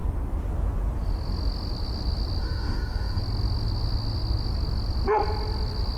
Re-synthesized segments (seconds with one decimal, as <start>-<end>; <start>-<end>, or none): 2.4-3.2